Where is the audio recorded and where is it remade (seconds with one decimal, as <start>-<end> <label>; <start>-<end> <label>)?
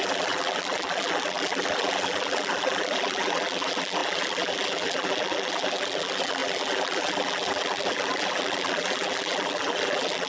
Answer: 0.0-10.3 remade